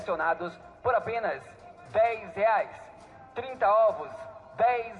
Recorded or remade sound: recorded